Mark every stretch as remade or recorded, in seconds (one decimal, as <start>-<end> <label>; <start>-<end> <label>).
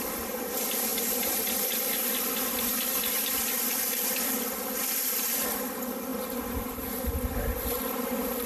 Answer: 0.0-8.5 recorded